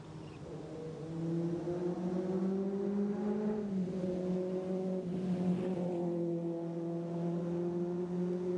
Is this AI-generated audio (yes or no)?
no